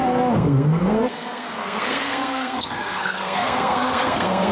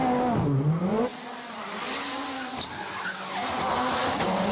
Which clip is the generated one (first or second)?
first